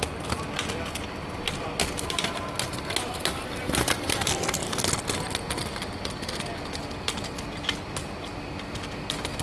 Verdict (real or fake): real